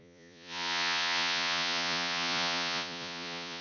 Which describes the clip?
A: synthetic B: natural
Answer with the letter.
A